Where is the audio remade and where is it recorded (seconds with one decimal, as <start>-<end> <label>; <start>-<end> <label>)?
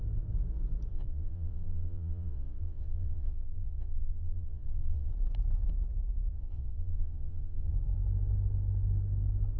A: 0.0-0.9 recorded; 0.9-5.1 remade; 5.1-6.3 recorded; 6.3-7.7 remade; 7.7-9.6 recorded